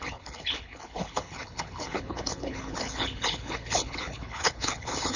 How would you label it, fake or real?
fake